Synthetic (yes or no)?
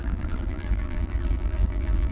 yes